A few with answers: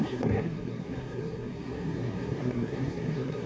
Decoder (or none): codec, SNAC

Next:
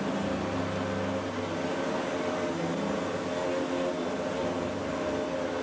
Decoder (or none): none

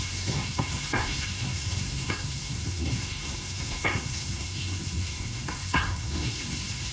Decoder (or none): codec, SNAC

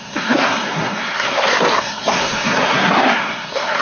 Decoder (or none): codec, SNAC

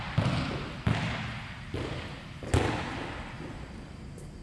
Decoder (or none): none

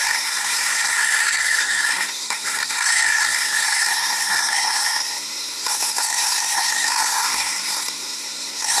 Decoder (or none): codec, SNAC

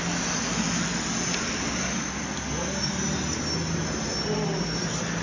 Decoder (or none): none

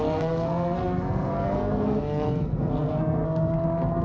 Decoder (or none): codec, SNAC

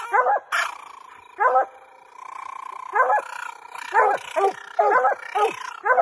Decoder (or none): none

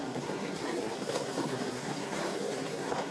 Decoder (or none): codec, SNAC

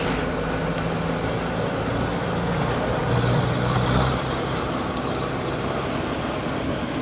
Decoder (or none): none